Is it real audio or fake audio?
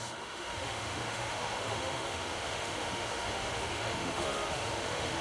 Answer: fake